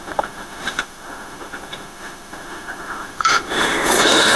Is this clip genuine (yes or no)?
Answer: no